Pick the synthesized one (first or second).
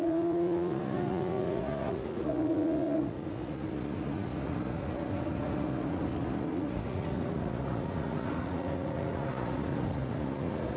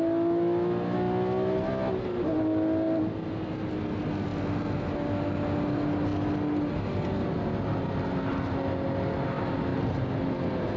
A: first